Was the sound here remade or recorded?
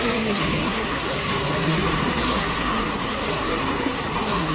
remade